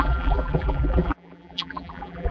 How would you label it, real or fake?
fake